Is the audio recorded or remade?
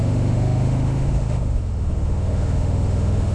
remade